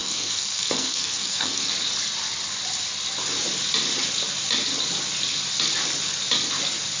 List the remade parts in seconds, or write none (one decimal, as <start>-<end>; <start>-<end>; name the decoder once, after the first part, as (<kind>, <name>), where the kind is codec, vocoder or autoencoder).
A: 0.0-1.7 (codec, SNAC)